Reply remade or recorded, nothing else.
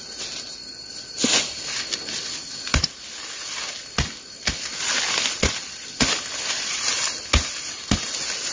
recorded